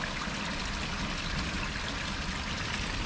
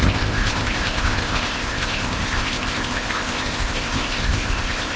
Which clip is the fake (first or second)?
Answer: second